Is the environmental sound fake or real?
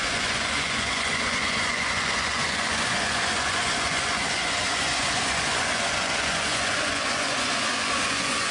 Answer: fake